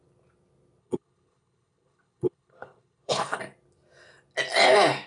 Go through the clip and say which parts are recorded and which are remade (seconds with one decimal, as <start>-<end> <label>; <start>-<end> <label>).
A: 0.0-0.8 recorded; 0.8-3.4 remade; 3.4-5.1 recorded